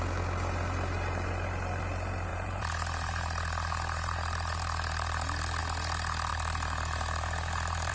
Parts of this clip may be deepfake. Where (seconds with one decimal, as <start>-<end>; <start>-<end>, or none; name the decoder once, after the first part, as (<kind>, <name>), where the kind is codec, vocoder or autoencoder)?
2.3-5.6 (vocoder, BigVGAN v2); 6.3-7.9